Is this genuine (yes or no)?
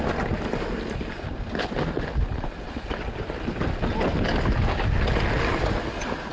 yes